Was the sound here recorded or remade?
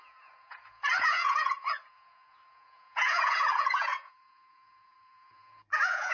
remade